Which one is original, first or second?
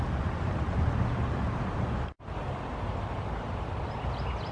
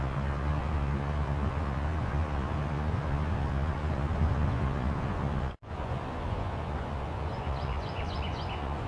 first